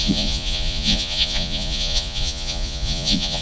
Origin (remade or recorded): remade